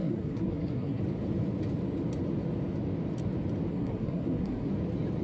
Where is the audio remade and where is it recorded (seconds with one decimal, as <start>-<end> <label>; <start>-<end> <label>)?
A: 0.0-1.0 remade; 1.0-3.7 recorded; 3.7-4.7 remade; 4.7-5.2 recorded